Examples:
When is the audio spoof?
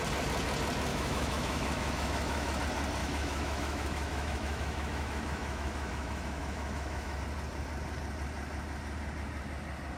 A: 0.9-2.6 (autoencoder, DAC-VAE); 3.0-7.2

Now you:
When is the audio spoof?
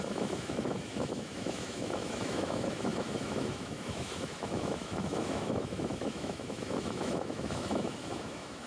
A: 0.0-8.7 (autoencoder, DAC-VAE)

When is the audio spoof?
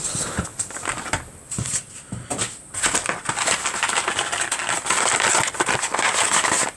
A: none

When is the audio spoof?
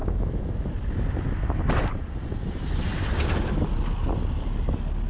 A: 0.0-0.7 (autoencoder, DAC-VAE)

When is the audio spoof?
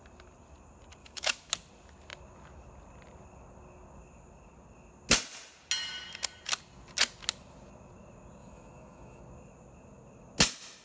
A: 1.0-1.5 (autoencoder, DAC-VAE); 8.4-9.2